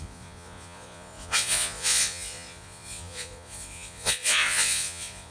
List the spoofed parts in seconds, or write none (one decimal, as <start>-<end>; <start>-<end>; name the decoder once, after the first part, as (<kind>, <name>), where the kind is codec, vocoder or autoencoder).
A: 0.0-5.3 (vocoder, Vocos)